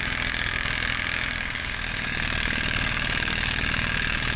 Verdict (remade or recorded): remade